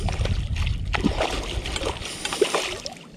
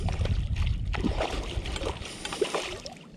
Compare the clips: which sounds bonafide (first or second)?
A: first